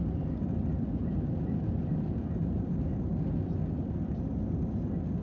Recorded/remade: recorded